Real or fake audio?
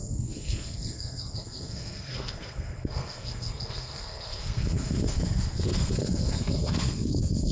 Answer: fake